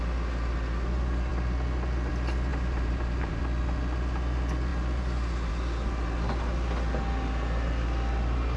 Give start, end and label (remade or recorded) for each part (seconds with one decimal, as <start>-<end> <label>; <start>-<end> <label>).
0.0-2.5 recorded; 2.5-3.4 remade; 3.4-8.6 recorded